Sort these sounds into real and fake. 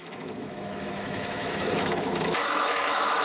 fake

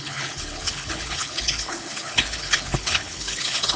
fake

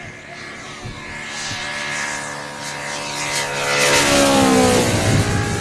real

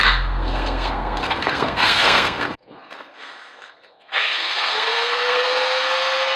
fake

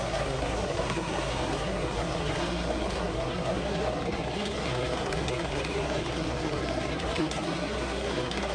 fake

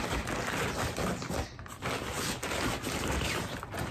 real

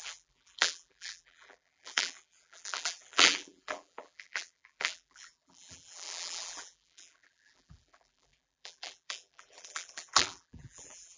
fake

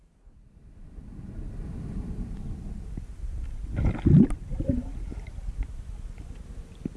real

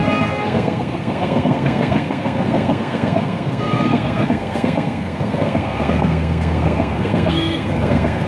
fake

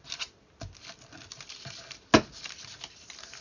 real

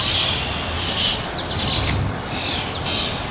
real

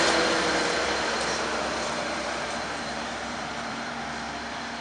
fake